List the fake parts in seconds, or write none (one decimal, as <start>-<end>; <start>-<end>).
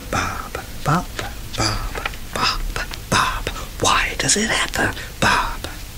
none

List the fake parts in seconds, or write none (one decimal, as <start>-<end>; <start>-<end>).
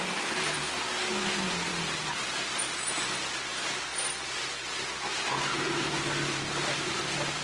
none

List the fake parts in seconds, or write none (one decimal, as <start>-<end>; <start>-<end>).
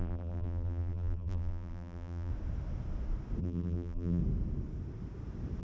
0.0-2.3; 3.4-4.2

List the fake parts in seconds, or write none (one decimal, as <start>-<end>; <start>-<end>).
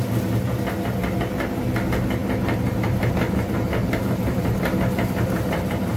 2.2-6.0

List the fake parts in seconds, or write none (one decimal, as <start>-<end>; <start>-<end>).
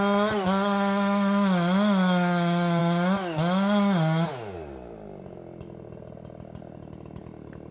none